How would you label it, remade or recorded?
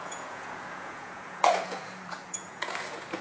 remade